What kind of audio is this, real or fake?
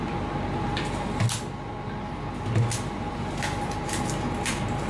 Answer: real